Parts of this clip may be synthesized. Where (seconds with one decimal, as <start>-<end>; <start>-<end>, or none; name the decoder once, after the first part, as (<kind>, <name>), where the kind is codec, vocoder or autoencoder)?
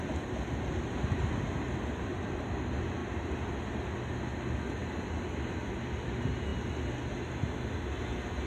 4.8-5.4 (vocoder, BigVGAN v2)